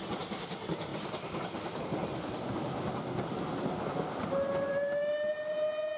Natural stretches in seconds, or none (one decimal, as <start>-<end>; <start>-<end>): 0.0-6.0